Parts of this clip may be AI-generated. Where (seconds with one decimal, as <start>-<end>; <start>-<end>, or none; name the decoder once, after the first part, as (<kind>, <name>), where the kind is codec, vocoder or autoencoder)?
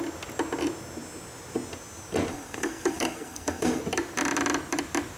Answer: 2.3-3.8 (codec, SNAC)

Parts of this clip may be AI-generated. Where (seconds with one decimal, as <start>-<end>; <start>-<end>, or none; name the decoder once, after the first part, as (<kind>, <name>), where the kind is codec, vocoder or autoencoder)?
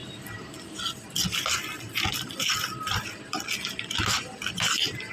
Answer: none